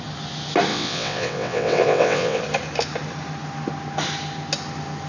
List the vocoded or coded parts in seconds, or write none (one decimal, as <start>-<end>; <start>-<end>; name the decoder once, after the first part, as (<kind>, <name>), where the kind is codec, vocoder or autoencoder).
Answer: 0.7-2.4 (vocoder, WaveNeXt)